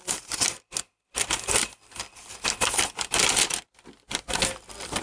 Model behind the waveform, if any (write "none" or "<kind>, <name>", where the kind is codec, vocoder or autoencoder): none